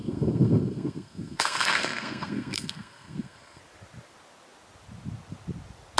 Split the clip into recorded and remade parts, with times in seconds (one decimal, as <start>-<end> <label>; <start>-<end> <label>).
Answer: 0.0-3.6 remade; 3.6-6.0 recorded